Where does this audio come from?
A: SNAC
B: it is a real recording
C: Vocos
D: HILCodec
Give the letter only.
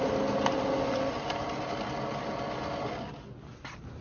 B